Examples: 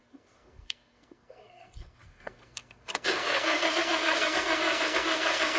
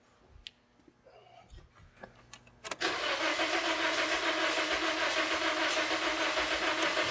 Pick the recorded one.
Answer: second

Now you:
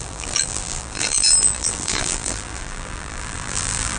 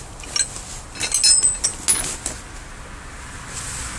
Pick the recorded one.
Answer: second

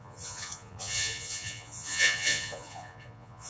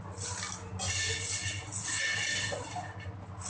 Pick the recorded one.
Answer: second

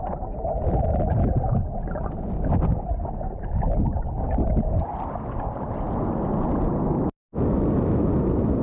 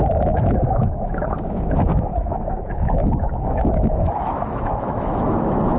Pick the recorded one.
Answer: first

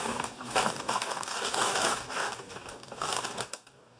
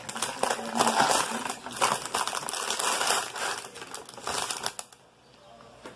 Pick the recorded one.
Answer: second